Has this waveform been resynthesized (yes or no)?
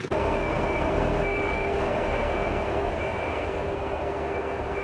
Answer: yes